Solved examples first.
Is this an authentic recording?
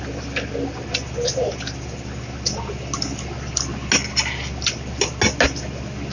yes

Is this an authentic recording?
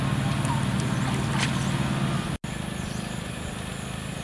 yes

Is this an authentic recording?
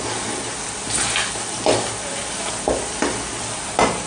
yes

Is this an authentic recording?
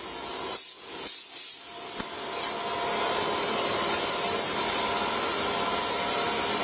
yes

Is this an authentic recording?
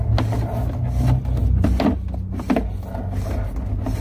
yes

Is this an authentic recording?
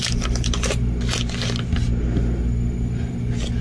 yes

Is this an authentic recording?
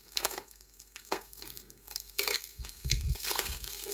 no